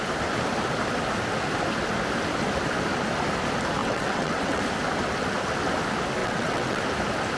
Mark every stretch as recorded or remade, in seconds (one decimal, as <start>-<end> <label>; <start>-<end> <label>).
0.0-3.8 recorded; 3.8-4.6 remade; 4.6-6.2 recorded; 6.2-6.8 remade; 6.8-7.4 recorded